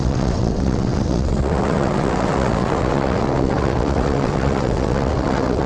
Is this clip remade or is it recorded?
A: remade